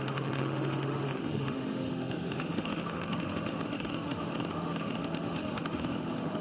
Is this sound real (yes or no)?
no